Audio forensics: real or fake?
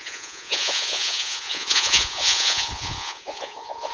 fake